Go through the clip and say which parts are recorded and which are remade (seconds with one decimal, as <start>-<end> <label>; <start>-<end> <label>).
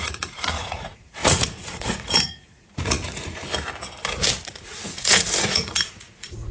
0.0-3.4 remade; 3.4-4.6 recorded; 4.6-6.5 remade